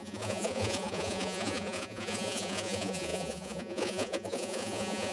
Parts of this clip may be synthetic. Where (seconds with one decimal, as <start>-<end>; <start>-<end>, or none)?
0.0-5.1